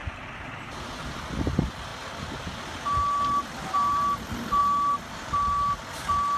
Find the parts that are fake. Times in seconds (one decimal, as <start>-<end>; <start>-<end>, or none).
none